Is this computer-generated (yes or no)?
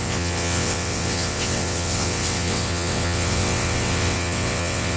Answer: yes